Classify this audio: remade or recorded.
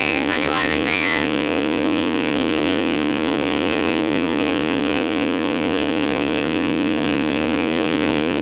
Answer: remade